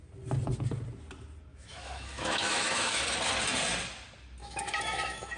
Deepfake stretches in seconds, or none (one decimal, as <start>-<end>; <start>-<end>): 1.5-3.0; 4.4-5.4